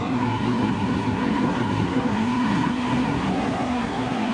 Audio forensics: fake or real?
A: fake